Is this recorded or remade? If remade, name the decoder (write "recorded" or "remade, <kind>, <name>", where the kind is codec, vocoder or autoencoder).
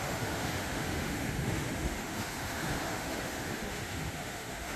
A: remade, autoencoder, DAC-VAE